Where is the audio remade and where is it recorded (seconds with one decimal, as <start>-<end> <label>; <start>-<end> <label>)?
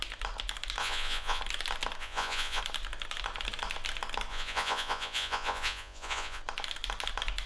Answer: 0.0-0.8 recorded; 0.8-1.4 remade; 1.4-2.0 recorded; 2.0-2.6 remade; 2.6-4.3 recorded; 4.3-6.4 remade; 6.4-7.5 recorded